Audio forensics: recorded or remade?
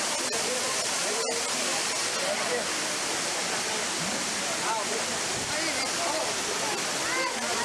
recorded